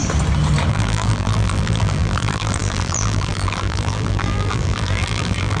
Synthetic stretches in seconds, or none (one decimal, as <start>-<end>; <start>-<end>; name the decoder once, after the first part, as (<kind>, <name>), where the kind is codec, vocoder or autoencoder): 0.7-5.6 (vocoder, BigVGAN v2)